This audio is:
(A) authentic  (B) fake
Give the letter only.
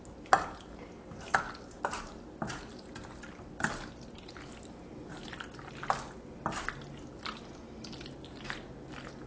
A